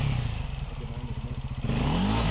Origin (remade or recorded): recorded